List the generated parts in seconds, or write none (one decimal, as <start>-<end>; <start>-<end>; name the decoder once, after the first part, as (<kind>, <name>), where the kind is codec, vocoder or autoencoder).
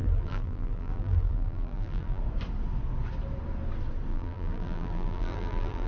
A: 0.0-2.2 (vocoder, BigVGAN v2); 4.1-5.9